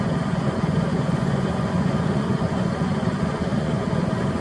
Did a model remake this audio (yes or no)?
yes